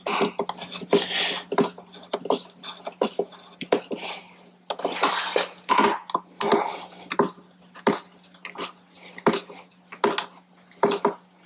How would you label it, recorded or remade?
recorded